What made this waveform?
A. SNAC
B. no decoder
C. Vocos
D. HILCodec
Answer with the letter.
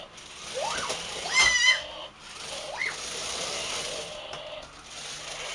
B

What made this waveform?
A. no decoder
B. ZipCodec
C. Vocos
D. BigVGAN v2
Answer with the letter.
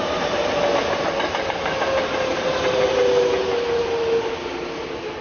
A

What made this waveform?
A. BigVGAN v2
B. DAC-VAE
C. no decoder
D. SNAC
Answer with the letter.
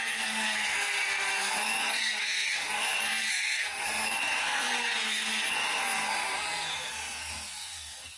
D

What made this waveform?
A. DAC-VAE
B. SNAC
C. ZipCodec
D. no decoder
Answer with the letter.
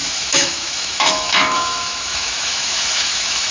A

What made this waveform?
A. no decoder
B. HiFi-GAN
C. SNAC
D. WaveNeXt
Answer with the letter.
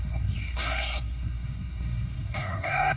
C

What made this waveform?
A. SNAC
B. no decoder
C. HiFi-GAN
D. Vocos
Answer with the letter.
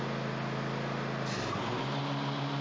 B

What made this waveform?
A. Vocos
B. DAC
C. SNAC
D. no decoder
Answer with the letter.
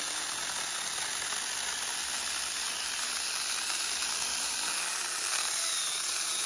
D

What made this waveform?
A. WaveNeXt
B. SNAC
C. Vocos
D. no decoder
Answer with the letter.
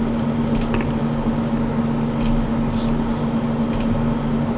D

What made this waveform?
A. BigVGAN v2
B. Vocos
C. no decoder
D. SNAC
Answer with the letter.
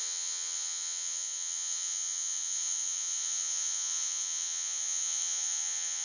B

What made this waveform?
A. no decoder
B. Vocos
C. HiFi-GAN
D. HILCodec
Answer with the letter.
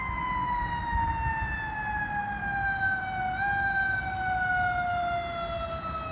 A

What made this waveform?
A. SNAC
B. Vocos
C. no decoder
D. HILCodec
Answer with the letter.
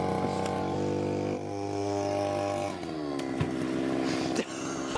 C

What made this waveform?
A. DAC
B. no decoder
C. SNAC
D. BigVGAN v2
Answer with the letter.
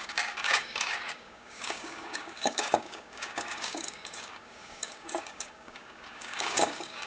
A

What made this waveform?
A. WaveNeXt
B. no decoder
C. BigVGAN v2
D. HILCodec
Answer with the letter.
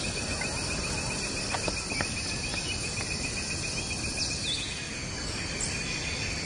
B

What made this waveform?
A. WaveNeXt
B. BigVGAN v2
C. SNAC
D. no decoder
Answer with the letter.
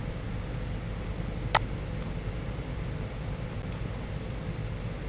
D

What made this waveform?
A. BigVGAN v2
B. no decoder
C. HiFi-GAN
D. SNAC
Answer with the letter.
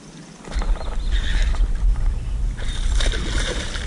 B